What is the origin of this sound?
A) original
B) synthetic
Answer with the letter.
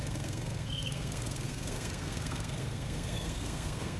B